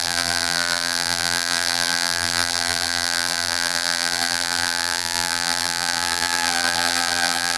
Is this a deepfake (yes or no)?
yes